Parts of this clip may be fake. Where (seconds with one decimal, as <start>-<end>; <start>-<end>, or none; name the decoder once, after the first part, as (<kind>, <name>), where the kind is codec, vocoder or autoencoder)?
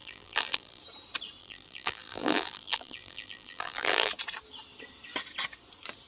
0.0-0.8 (vocoder, BigVGAN v2); 1.4-4.1